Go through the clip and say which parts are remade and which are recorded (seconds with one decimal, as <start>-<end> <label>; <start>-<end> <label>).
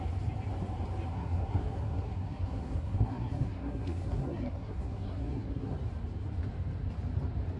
0.0-1.1 recorded; 1.1-5.7 remade; 5.7-7.6 recorded